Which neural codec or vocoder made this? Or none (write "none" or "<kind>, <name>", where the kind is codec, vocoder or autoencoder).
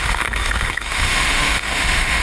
autoencoder, DAC-VAE